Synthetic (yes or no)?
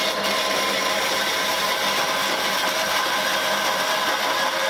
no